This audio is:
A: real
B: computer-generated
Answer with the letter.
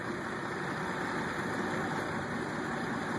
A